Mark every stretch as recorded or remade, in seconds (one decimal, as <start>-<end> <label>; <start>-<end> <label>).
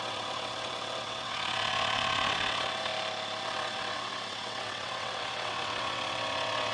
0.0-2.9 remade; 2.9-3.4 recorded; 3.4-6.7 remade